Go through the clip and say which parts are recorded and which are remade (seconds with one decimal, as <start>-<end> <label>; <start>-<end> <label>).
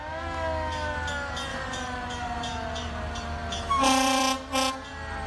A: 0.0-1.5 recorded; 1.5-4.2 remade; 4.2-5.3 recorded